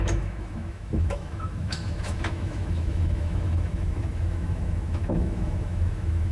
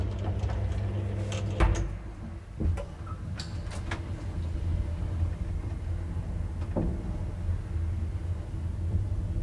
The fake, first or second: first